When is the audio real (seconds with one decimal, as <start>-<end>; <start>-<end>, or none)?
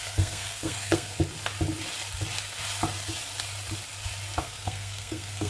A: 1.1-4.4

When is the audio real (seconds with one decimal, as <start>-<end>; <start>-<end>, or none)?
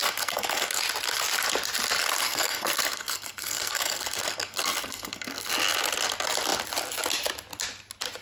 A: 0.8-2.2; 5.5-8.2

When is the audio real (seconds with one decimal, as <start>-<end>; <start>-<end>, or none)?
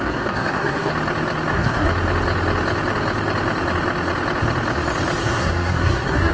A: 0.9-1.5; 1.9-5.2